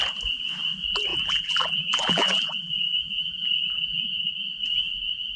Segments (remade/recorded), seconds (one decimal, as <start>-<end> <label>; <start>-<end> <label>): 0.0-1.1 recorded; 1.1-4.3 remade; 4.3-5.4 recorded